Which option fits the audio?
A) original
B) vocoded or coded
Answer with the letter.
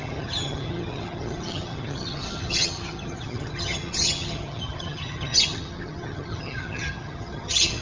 B